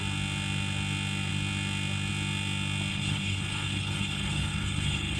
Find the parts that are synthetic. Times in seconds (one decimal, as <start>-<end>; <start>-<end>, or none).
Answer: 2.9-5.2